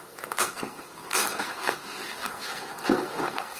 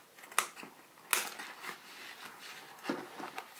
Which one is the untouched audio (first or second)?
second